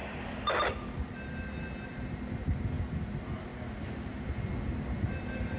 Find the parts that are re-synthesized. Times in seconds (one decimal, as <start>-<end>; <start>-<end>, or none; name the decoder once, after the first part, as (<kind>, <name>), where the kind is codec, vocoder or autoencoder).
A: 0.0-2.6 (vocoder, BigVGAN v2)